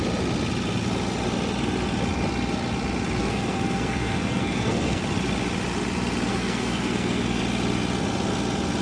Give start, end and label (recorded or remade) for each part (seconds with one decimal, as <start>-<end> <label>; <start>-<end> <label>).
0.0-3.2 recorded; 3.2-5.0 remade; 5.0-6.3 recorded; 6.3-7.4 remade; 7.4-8.8 recorded